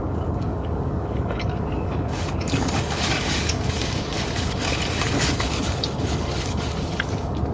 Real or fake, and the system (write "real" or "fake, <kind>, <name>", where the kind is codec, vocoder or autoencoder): fake, codec, DAC